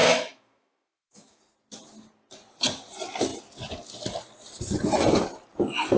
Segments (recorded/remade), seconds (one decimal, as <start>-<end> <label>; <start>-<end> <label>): 0.0-1.4 remade; 1.4-6.0 recorded